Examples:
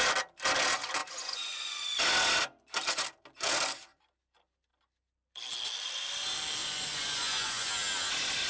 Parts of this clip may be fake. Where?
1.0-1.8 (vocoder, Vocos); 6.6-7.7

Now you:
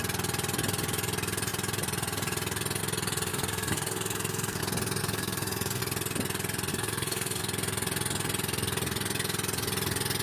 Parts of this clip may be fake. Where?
3.3-4.6 (codec, SNAC); 5.0-5.8; 6.7-7.4

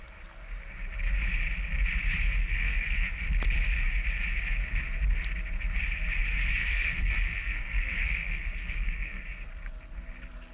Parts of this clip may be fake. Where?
2.4-3.1 (codec, SNAC); 6.6-9.5

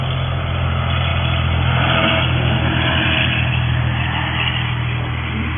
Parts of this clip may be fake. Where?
none

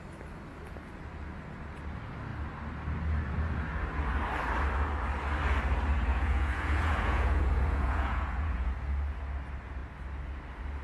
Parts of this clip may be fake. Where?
6.1-8.7 (vocoder, Vocos)

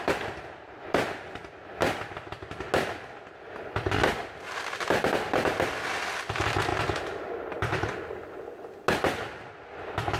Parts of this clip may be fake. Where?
none

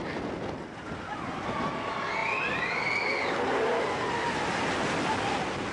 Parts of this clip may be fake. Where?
none